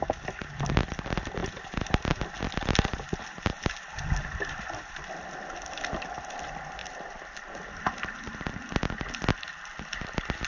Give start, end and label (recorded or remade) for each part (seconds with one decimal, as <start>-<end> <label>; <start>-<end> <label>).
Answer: 0.0-1.4 recorded; 1.4-2.2 remade; 2.2-2.6 recorded; 2.6-4.0 remade; 4.0-10.5 recorded

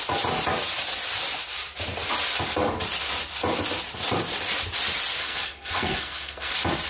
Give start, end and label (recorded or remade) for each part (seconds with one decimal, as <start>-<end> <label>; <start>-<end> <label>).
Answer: 0.0-5.2 recorded; 5.2-6.5 remade; 6.5-6.9 recorded

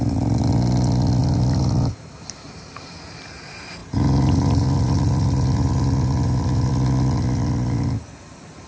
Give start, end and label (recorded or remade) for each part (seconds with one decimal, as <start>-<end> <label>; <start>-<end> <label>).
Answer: 0.0-1.2 recorded; 1.2-3.3 remade; 3.3-3.8 recorded; 3.8-6.7 remade; 6.7-8.7 recorded

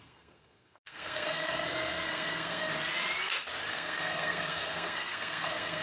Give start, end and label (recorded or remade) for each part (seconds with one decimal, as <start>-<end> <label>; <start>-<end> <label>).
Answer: 0.0-2.7 remade; 2.7-3.7 recorded; 3.7-5.8 remade

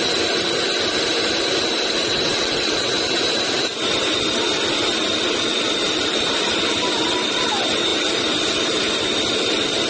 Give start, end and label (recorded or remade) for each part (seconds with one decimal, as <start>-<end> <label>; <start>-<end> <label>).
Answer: 0.0-2.0 recorded; 2.0-3.0 remade; 3.0-9.9 recorded